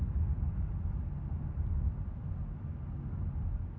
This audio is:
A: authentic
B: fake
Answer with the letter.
A